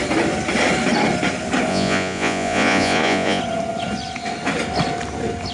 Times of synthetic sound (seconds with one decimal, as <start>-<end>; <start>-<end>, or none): 1.7-3.4